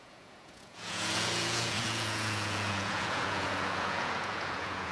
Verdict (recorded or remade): remade